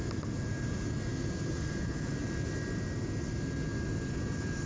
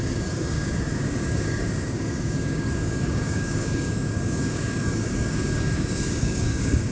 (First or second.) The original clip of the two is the first